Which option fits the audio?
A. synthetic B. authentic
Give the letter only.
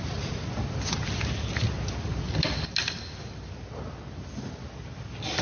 B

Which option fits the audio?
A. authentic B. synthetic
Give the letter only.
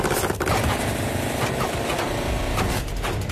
A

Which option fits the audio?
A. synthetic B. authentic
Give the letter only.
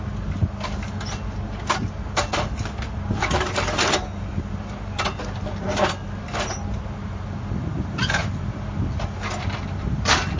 B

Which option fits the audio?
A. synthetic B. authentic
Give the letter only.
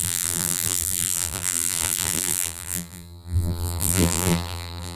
A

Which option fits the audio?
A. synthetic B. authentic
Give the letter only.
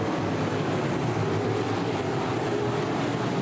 B